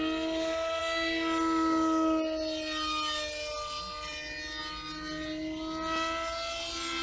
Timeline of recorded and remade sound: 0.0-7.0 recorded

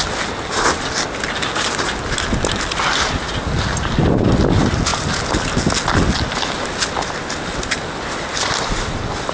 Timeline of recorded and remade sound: 0.0-9.3 recorded